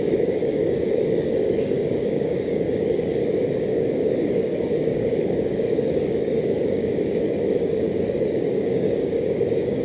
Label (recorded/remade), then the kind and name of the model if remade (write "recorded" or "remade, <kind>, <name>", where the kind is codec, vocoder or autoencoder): remade, codec, DAC